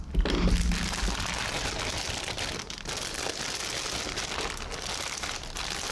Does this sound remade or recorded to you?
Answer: recorded